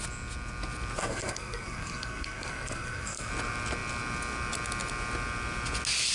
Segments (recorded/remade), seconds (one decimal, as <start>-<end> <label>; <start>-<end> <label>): 0.0-1.0 recorded; 1.0-3.3 remade; 3.3-6.1 recorded